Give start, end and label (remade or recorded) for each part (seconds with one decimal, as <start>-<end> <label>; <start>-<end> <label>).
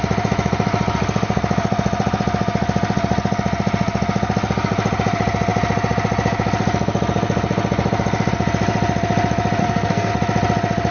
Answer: 0.0-9.6 recorded; 9.6-10.1 remade; 10.1-10.9 recorded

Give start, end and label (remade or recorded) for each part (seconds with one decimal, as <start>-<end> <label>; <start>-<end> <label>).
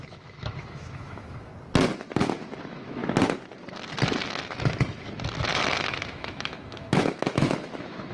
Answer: 0.0-1.5 remade; 1.5-2.6 recorded; 2.6-3.0 remade; 3.0-5.6 recorded; 5.6-8.1 remade